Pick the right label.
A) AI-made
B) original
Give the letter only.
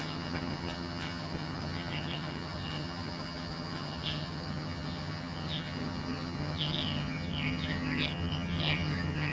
A